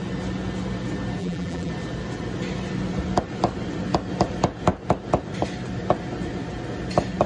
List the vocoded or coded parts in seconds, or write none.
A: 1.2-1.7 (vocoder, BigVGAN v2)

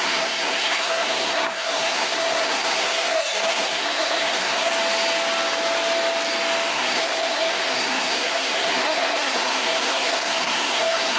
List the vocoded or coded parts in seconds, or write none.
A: 0.0-4.7 (codec, SNAC); 6.7-11.2

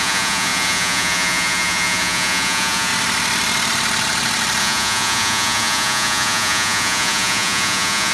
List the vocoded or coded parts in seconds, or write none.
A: 0.0-2.9 (vocoder, Vocos); 4.6-8.1